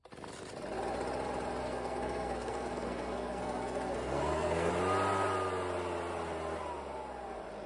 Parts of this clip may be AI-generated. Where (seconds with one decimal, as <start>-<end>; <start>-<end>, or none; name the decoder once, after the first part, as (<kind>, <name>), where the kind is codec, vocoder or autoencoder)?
1.6-4.7 (codec, SNAC)